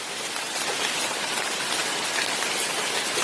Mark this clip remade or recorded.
recorded